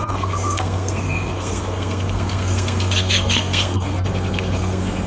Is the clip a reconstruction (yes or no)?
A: yes